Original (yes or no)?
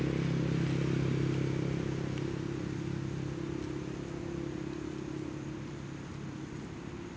yes